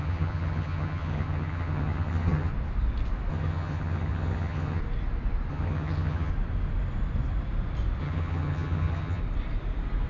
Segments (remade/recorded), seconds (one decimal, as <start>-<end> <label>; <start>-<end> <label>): 0.0-2.5 remade; 2.5-3.3 recorded; 3.3-4.8 remade; 4.8-5.5 recorded; 5.5-6.3 remade; 6.3-8.0 recorded; 8.0-9.2 remade; 9.2-10.1 recorded